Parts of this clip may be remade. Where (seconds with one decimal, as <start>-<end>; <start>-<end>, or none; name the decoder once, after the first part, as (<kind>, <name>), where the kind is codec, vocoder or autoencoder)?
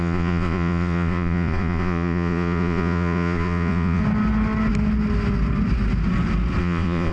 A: 0.0-4.0 (vocoder, Vocos); 6.6-7.1